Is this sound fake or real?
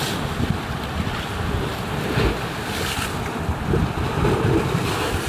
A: real